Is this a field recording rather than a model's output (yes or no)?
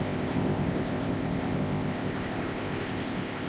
no